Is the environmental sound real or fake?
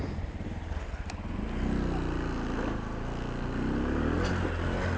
real